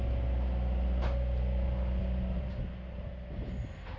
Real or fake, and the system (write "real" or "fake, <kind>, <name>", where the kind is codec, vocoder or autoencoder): real